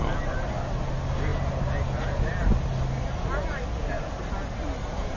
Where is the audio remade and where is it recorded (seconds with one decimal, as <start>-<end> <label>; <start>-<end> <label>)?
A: 0.0-5.2 recorded